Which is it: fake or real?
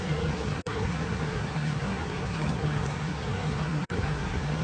fake